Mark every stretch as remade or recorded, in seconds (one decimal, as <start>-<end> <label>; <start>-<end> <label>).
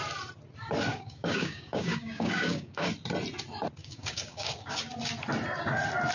0.0-0.9 recorded; 0.9-2.9 remade; 2.9-3.8 recorded; 3.8-4.8 remade; 4.8-6.1 recorded